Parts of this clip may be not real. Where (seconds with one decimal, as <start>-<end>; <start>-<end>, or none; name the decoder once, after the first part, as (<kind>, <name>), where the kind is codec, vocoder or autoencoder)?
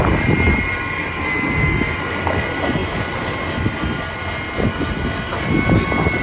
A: none